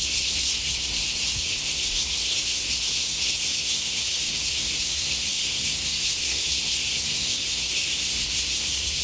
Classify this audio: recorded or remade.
remade